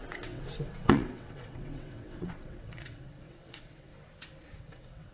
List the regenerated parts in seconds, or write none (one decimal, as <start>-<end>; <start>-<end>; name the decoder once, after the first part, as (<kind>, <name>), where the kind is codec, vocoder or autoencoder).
0.0-3.9 (vocoder, WaveNeXt); 4.6-5.1